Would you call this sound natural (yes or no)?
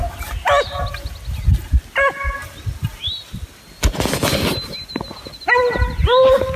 yes